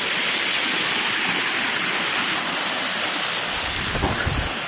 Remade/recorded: recorded